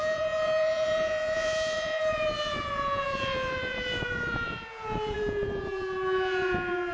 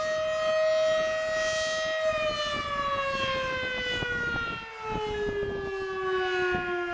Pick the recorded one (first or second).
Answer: second